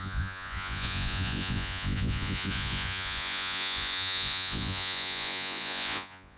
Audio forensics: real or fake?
fake